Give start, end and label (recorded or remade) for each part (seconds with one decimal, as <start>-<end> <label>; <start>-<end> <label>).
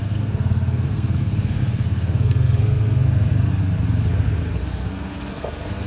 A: 0.0-3.5 remade; 3.5-4.1 recorded; 4.1-5.9 remade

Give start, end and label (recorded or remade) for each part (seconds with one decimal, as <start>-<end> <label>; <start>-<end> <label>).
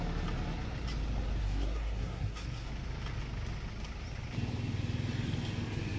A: 0.0-1.4 recorded; 1.4-2.7 remade; 2.7-6.0 recorded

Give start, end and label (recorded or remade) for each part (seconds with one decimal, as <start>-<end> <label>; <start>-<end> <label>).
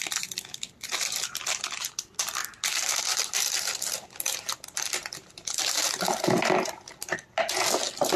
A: 0.0-8.2 recorded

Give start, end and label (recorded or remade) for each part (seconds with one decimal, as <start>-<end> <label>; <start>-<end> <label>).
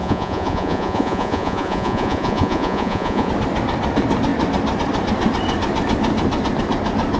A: 0.0-3.3 remade; 3.3-7.2 recorded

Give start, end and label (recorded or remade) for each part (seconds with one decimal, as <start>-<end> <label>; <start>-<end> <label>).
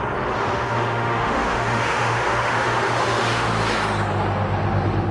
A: 0.0-0.4 recorded; 0.4-3.5 remade; 3.5-5.1 recorded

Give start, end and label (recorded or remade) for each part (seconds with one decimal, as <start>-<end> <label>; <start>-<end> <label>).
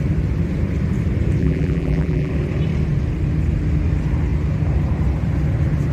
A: 0.0-1.4 recorded; 1.4-2.3 remade; 2.3-5.9 recorded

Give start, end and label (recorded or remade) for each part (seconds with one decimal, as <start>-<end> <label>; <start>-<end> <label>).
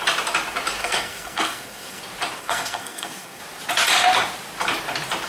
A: 0.0-0.8 recorded; 0.8-2.0 remade; 2.0-2.4 recorded; 2.4-3.4 remade; 3.4-5.3 recorded